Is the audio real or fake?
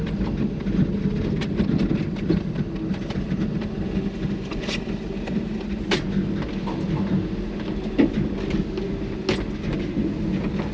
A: real